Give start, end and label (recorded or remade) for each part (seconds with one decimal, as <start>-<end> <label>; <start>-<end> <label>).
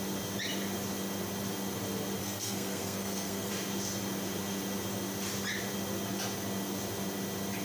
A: 0.0-2.2 recorded; 2.2-3.5 remade; 3.5-7.6 recorded